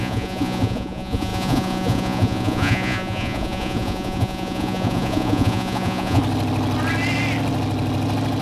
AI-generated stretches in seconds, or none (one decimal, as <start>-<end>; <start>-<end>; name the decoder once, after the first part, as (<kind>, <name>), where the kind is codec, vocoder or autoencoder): 0.0-6.2 (vocoder, Vocos)